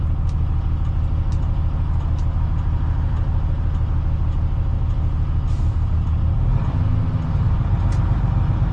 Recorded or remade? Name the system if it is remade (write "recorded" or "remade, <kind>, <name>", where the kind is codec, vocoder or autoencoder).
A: recorded